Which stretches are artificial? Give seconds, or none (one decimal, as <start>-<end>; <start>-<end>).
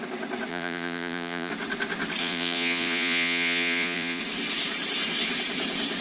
0.5-1.5; 2.2-4.2